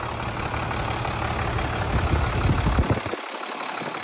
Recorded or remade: recorded